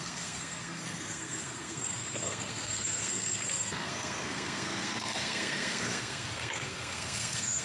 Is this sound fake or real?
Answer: fake